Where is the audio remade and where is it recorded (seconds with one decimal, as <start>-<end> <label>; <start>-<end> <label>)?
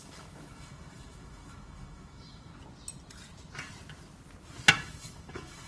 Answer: 0.0-2.5 remade; 2.5-4.7 recorded; 4.7-5.7 remade